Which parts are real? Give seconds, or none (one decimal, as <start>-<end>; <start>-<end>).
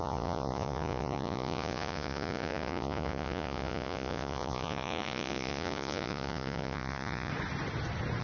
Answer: 7.3-8.2